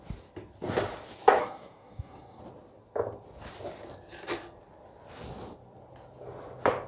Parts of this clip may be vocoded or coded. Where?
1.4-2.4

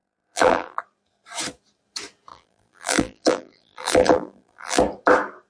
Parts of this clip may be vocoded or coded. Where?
0.0-0.8; 2.3-4.8